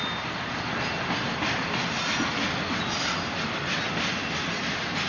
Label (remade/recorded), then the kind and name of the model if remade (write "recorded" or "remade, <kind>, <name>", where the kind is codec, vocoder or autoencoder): recorded